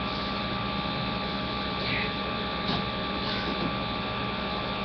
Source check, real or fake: real